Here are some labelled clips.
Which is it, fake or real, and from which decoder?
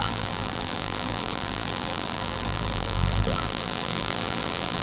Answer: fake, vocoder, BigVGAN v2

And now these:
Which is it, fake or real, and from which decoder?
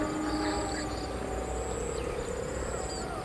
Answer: real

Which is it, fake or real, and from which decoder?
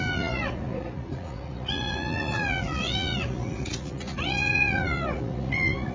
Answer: fake, vocoder, Vocos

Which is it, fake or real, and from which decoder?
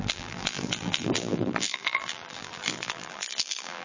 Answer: fake, vocoder, BigVGAN v2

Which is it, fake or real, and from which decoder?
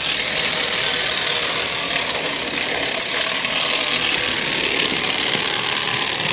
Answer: real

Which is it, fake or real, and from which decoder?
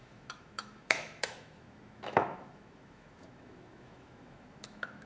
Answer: fake, autoencoder, DAC-VAE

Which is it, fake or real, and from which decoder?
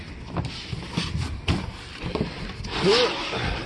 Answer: real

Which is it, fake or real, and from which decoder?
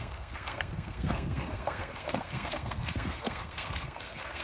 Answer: fake, codec, SNAC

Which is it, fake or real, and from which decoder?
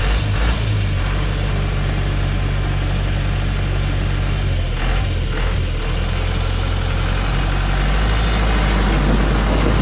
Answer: real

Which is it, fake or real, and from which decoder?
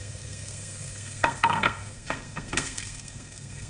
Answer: fake, codec, SNAC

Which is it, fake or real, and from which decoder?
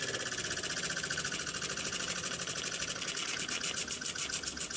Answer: real